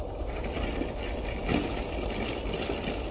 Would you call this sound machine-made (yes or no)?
no